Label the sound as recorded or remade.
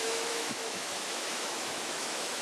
remade